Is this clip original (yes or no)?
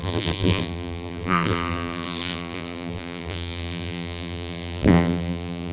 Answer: no